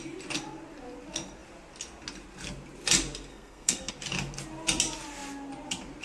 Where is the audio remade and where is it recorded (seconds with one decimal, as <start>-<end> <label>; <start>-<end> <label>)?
0.0-3.3 recorded; 3.3-3.9 remade; 3.9-6.0 recorded